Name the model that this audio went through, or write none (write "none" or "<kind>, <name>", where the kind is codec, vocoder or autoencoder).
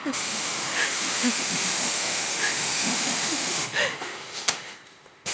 autoencoder, DAC-VAE